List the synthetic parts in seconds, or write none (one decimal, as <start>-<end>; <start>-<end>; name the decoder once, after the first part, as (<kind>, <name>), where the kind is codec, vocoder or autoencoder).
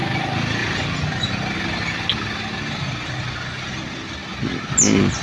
none